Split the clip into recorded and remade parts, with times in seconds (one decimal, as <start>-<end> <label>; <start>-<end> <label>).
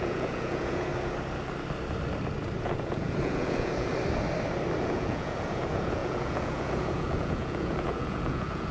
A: 0.0-0.9 remade; 0.9-2.6 recorded; 2.6-3.9 remade; 3.9-4.8 recorded; 4.8-8.7 remade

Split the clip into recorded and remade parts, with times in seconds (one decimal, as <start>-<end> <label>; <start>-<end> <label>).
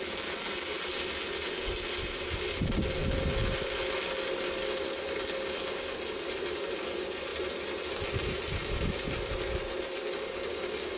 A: 0.0-11.0 recorded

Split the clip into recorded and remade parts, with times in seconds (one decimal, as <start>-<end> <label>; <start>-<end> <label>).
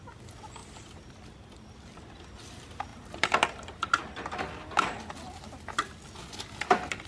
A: 0.0-7.1 recorded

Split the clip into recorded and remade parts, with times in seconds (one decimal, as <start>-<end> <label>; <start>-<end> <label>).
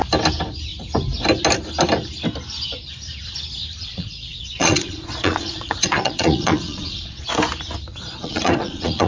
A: 0.0-3.9 recorded; 3.9-7.2 remade; 7.2-7.9 recorded; 7.9-9.1 remade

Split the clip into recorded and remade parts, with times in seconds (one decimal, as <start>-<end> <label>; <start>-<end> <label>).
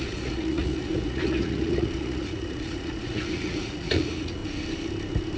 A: 0.0-4.4 remade; 4.4-5.4 recorded